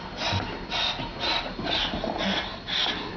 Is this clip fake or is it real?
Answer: real